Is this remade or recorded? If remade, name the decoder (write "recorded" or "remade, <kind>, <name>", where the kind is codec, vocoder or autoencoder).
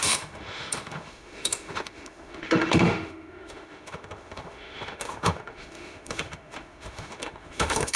remade, autoencoder, DAC-VAE